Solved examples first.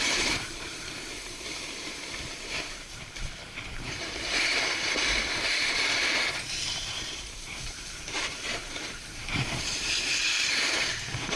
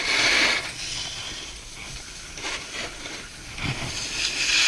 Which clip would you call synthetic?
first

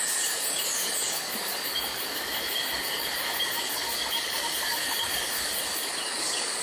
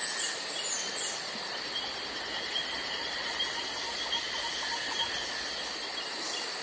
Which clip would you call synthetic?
first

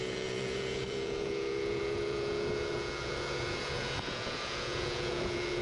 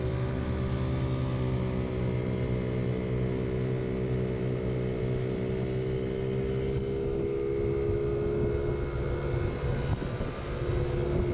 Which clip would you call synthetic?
first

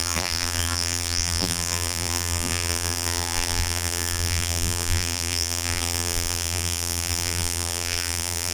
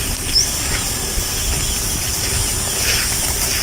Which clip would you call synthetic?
first